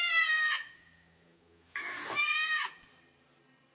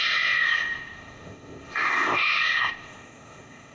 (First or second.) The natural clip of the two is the first